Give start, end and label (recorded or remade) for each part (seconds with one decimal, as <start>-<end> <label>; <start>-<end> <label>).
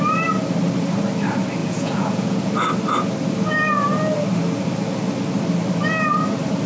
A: 0.0-1.6 recorded; 1.6-2.5 remade; 2.5-6.7 recorded